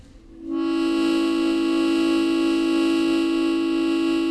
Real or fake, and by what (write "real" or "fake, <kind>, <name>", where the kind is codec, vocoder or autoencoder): real